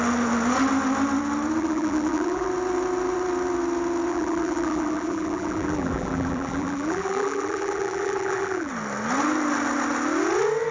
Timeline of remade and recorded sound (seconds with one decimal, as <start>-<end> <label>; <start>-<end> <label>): 0.0-1.6 recorded; 1.6-2.5 remade; 2.5-4.1 recorded; 4.1-8.7 remade; 8.7-10.7 recorded